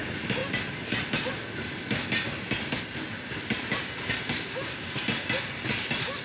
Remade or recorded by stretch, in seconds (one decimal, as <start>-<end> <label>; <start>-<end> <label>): 0.0-6.2 recorded

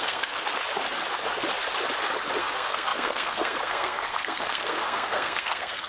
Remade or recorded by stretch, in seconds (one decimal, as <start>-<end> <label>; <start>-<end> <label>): 0.0-0.5 remade; 0.5-2.4 recorded; 2.4-5.9 remade

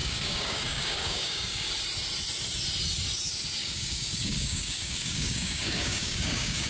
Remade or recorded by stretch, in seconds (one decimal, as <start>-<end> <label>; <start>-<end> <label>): 0.0-1.7 remade; 1.7-3.6 recorded; 3.6-6.7 remade

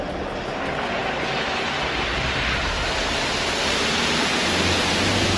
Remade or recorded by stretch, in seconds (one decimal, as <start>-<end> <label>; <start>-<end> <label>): 0.0-5.4 recorded

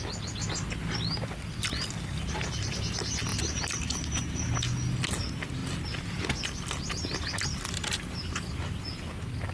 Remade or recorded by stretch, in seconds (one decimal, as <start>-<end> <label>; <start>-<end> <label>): 0.0-3.3 recorded; 3.3-4.5 remade; 4.5-7.8 recorded; 7.8-8.6 remade; 8.6-9.5 recorded